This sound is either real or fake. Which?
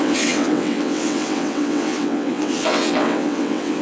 fake